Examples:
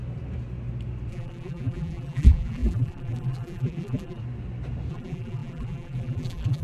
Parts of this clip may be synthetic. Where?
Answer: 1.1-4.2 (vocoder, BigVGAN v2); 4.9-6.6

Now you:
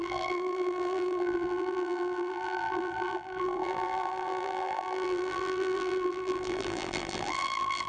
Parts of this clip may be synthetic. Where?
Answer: 0.0-7.9 (vocoder, BigVGAN v2)